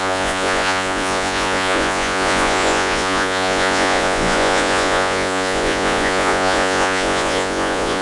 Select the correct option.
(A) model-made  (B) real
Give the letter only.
A